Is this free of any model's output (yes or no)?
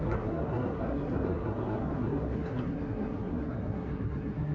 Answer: no